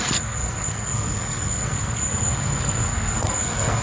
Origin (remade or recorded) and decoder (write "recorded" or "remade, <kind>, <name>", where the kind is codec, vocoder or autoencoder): remade, codec, SNAC